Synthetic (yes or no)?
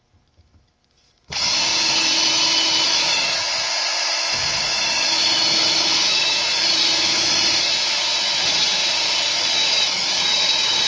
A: yes